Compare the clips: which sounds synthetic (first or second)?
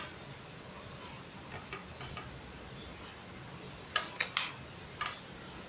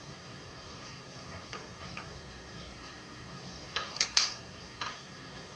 second